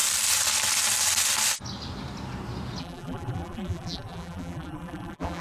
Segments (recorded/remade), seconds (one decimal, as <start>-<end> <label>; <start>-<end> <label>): 0.0-2.8 recorded; 2.8-5.4 remade